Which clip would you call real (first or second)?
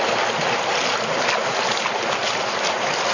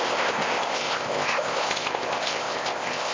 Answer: first